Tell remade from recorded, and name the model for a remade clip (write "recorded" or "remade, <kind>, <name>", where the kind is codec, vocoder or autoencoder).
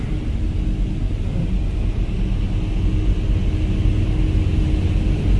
recorded